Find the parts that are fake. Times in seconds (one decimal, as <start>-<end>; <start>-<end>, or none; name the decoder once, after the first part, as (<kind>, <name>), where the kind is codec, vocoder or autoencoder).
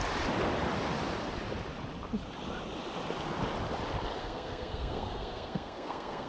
4.2-6.3 (codec, SNAC)